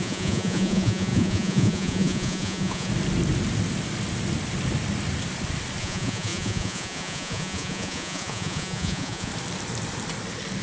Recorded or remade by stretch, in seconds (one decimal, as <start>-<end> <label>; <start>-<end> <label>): 0.0-2.9 remade; 2.9-5.8 recorded; 5.8-9.3 remade; 9.3-10.6 recorded